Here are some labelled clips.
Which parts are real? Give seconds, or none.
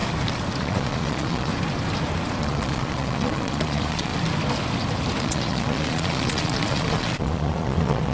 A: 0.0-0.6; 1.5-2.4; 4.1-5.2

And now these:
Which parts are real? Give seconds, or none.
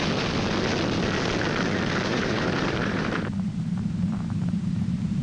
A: 0.0-2.1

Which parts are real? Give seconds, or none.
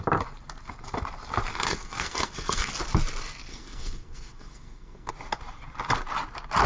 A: 0.0-1.5; 2.7-3.5; 5.1-6.7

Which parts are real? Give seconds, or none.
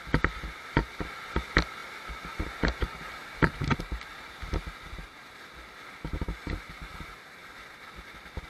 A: 0.0-8.5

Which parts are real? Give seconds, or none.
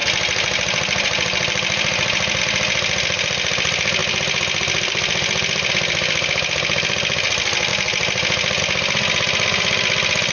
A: 2.4-4.0; 5.7-10.3